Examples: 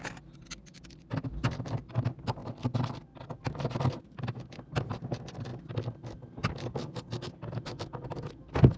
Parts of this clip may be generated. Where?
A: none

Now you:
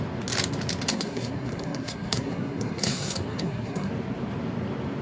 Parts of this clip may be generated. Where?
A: 0.9-3.9 (codec, SNAC)

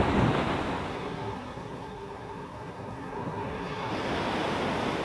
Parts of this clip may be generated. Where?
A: 0.9-3.9 (codec, SNAC)